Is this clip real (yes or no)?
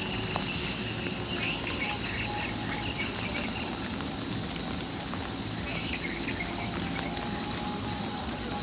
yes